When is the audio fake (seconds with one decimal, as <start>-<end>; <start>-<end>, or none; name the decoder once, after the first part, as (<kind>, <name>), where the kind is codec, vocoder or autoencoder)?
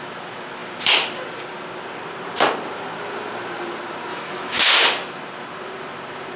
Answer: 4.1-4.7 (autoencoder, DAC-VAE)